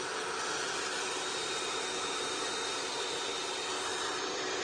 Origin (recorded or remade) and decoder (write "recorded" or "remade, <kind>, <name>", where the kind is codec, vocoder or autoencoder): recorded